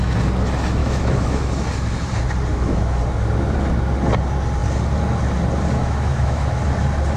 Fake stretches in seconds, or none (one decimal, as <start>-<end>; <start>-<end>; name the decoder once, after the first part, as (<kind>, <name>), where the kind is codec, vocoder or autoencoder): 0.8-1.5 (autoencoder, DAC-VAE); 2.5-3.0; 5.8-6.6